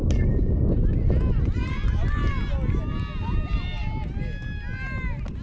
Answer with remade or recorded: recorded